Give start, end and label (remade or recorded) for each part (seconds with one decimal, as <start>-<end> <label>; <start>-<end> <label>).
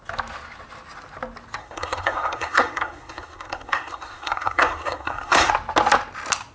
0.0-1.6 recorded; 1.6-5.5 remade; 5.5-6.5 recorded